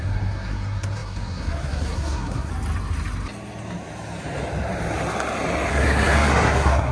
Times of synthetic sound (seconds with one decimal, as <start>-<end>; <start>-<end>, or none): 0.0-2.5; 5.7-6.9